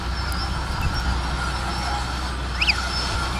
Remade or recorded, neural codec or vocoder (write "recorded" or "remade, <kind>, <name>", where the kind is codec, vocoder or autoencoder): recorded